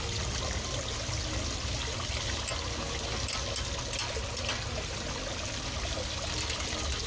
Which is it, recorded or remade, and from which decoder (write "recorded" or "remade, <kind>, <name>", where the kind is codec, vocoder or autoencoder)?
recorded